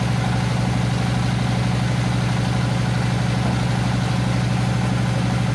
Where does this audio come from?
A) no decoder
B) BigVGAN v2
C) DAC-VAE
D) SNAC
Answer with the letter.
A